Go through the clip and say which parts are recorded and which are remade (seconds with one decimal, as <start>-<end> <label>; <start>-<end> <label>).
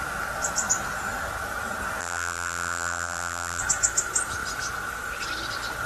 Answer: 0.0-2.0 recorded; 2.0-3.6 remade; 3.6-5.9 recorded